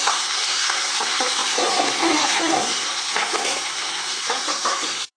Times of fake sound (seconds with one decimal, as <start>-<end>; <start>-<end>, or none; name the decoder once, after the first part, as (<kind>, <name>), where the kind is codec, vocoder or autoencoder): 0.0-5.2 (codec, SNAC)